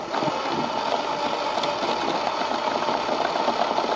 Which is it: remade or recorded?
recorded